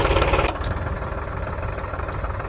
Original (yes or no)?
no